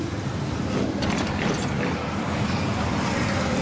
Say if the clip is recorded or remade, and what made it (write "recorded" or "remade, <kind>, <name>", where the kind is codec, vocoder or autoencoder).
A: recorded